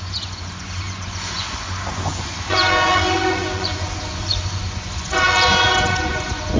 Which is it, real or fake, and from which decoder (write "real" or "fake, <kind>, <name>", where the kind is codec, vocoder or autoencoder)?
fake, vocoder, Vocos